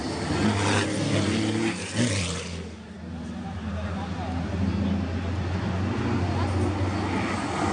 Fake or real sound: real